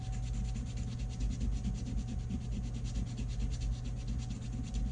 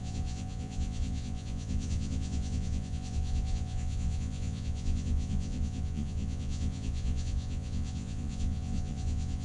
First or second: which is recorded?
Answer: first